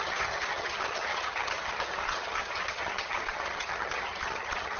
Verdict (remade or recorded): remade